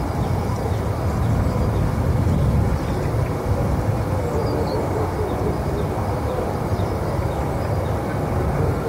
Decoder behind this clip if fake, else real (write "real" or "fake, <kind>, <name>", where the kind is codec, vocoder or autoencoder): real